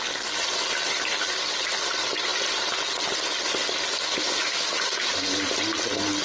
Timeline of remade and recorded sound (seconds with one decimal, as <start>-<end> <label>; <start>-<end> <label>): 0.0-4.4 recorded; 4.4-5.1 remade; 5.1-6.2 recorded